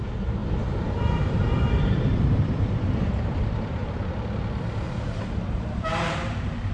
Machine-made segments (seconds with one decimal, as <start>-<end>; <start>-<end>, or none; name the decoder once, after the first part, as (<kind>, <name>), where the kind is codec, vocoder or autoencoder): 0.0-3.8 (vocoder, BigVGAN v2); 5.2-6.7

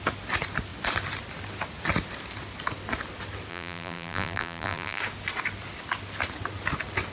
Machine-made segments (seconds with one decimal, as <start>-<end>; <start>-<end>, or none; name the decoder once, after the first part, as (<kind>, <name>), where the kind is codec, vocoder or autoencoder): 3.5-5.0 (vocoder, BigVGAN v2)

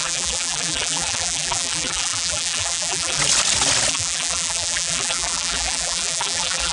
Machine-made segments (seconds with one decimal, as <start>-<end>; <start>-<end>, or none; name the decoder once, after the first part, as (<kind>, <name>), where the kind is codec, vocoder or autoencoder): 0.0-3.2 (vocoder, BigVGAN v2); 3.9-6.7

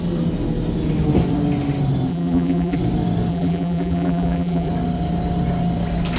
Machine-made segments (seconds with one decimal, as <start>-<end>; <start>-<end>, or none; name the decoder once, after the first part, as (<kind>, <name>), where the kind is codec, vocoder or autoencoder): 2.1-2.8 (vocoder, BigVGAN v2); 3.3-4.7